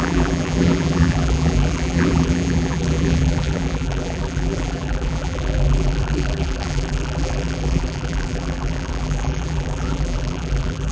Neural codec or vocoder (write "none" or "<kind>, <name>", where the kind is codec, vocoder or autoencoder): vocoder, BigVGAN v2